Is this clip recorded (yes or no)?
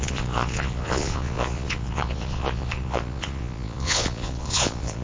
no